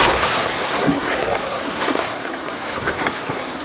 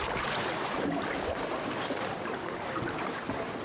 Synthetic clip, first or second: first